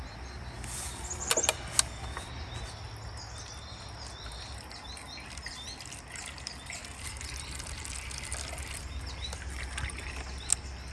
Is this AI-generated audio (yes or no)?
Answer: no